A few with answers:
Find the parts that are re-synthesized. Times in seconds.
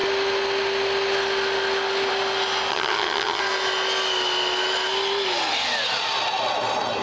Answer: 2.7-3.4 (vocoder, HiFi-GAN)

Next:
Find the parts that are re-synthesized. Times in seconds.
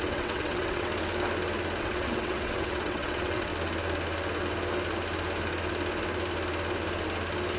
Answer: 0.0-0.9 (vocoder, WaveNeXt); 1.8-3.5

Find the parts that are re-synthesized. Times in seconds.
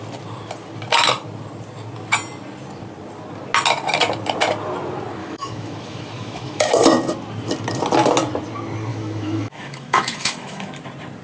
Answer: 5.2-6.7 (autoencoder, DAC-VAE); 8.9-10.7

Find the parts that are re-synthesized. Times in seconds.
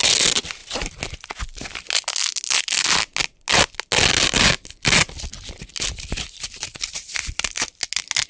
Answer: none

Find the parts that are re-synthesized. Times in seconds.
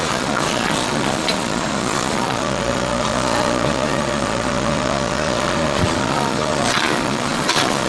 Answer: 0.0-7.9 (vocoder, Vocos)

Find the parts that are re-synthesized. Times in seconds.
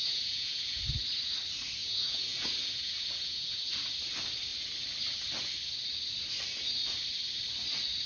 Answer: 0.0-0.8 (vocoder, Vocos); 1.8-3.6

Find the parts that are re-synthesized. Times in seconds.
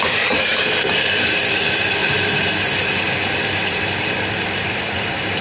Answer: 0.0-0.5 (vocoder, BigVGAN v2); 3.7-5.4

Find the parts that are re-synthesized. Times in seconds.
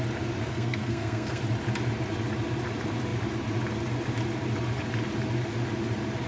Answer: 0.5-1.4 (codec, SNAC)